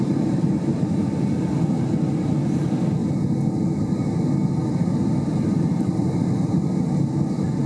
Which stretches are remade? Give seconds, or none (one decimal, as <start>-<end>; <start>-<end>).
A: 5.5-6.3